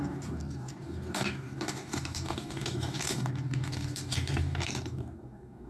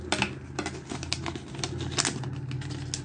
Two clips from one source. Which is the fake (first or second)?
first